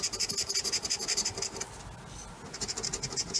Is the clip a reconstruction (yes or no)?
no